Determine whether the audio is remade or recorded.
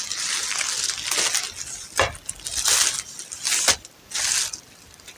recorded